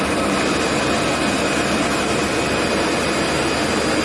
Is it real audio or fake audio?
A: real